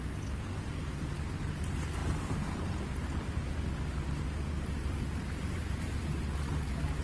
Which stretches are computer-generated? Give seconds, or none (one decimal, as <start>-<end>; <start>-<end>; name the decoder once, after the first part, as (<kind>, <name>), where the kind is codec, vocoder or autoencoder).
2.0-6.2 (vocoder, BigVGAN v2)